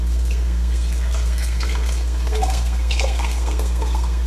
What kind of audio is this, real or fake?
fake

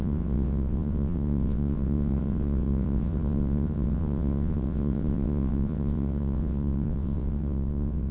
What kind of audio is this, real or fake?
fake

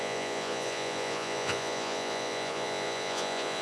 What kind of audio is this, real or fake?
fake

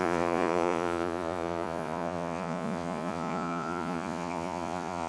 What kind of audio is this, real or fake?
fake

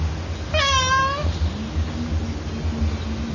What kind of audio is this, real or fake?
real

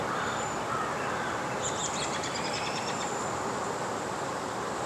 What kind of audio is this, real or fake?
fake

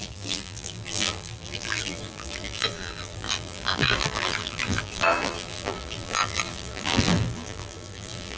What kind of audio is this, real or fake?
fake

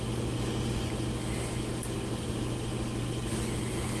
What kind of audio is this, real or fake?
real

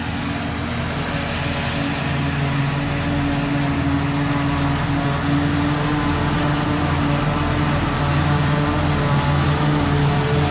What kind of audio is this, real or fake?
real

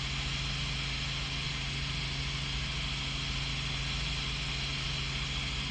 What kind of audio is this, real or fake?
real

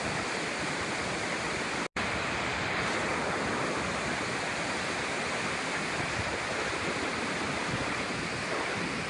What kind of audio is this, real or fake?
real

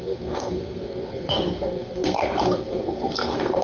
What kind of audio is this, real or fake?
fake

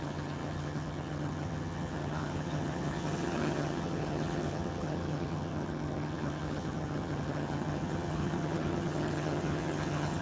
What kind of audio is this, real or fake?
fake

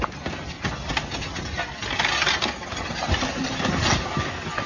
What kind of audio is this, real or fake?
real